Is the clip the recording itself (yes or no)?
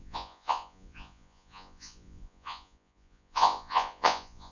no